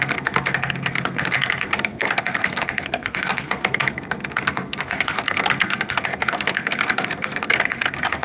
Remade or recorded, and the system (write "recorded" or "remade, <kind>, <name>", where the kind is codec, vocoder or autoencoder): remade, codec, SNAC